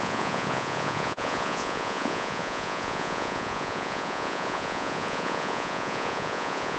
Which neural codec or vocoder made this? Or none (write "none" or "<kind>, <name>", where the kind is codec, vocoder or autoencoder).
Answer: vocoder, Vocos